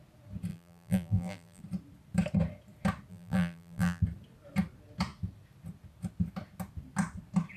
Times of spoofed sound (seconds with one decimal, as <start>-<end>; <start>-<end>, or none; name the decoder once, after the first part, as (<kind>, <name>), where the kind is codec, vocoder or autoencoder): 0.5-1.6 (vocoder, BigVGAN v2); 3.1-4.0